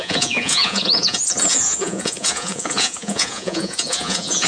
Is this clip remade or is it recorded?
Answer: remade